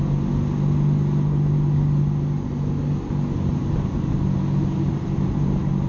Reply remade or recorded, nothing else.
recorded